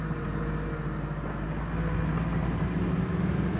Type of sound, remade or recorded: recorded